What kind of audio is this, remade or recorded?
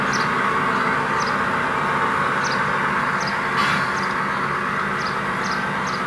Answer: recorded